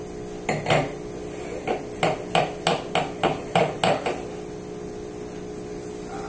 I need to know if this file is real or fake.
real